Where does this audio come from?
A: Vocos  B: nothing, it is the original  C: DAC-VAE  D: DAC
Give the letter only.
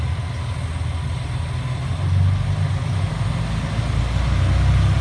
B